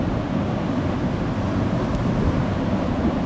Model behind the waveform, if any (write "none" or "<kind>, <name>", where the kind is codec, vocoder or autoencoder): none